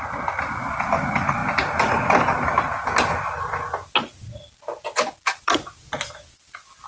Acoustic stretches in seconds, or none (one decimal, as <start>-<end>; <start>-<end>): 0.0-6.9